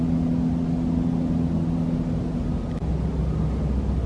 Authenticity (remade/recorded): recorded